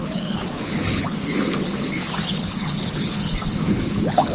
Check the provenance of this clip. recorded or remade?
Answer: remade